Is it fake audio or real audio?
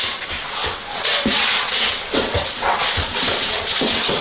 fake